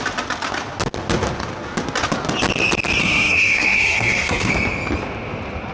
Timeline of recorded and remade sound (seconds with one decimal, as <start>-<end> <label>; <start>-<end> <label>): 0.0-3.0 recorded; 3.0-4.5 remade; 4.5-5.7 recorded